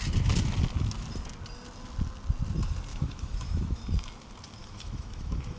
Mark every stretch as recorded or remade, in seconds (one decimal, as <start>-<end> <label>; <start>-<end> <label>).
0.0-2.9 recorded; 2.9-3.8 remade; 3.8-4.6 recorded; 4.6-5.6 remade